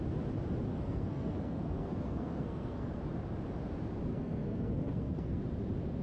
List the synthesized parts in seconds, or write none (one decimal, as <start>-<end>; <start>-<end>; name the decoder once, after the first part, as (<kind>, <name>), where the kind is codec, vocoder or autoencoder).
0.7-3.0 (codec, SNAC); 4.1-5.4